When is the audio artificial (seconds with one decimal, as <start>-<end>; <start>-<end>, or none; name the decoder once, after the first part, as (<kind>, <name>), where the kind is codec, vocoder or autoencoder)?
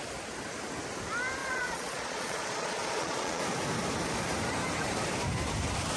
1.4-3.4 (vocoder, Vocos)